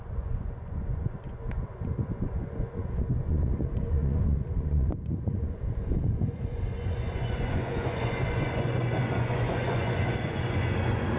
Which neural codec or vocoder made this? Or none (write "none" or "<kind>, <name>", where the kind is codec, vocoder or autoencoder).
vocoder, Vocos